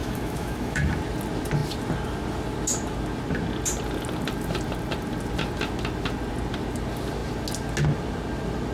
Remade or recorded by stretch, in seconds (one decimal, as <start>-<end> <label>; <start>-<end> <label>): 0.0-1.0 remade; 1.0-8.7 recorded